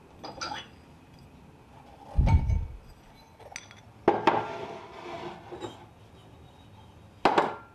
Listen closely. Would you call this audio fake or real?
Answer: real